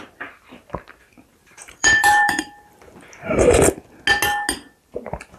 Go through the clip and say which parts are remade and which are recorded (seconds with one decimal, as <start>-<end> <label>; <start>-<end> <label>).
0.0-1.3 recorded; 1.3-3.6 remade; 3.6-5.4 recorded